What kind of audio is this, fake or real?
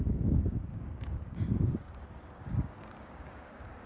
fake